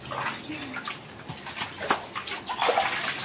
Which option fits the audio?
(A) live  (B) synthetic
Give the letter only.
A